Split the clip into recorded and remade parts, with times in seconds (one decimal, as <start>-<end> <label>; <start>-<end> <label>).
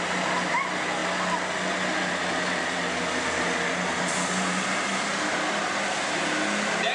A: 0.0-6.9 recorded